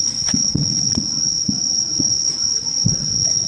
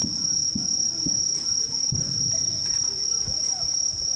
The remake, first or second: first